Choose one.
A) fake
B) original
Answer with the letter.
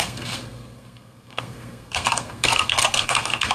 A